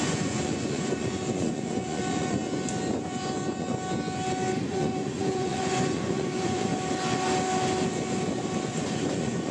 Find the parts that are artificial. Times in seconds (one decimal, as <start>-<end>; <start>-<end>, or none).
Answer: 0.0-2.4; 3.0-3.7; 4.6-6.7; 8.6-9.5